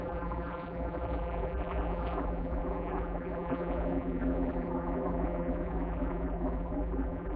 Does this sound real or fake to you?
fake